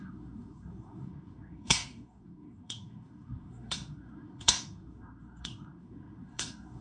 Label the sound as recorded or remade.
remade